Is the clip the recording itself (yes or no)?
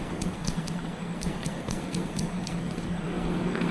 no